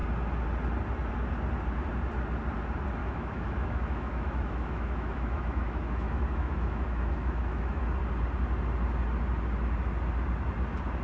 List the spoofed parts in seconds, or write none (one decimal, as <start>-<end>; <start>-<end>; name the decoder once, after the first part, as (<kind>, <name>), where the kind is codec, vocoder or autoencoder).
3.0-7.8 (autoencoder, DAC-VAE)